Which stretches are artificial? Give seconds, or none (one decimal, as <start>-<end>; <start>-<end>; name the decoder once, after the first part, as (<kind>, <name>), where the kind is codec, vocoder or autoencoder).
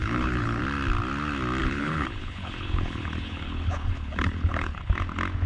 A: 0.0-0.6 (codec, HILCodec); 1.6-4.9